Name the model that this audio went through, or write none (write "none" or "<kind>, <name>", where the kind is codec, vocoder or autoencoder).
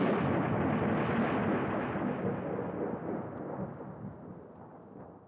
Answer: none